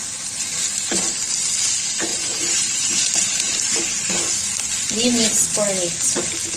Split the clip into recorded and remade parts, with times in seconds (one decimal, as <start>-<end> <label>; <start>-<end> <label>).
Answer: 0.0-2.1 recorded; 2.1-4.1 remade; 4.1-6.6 recorded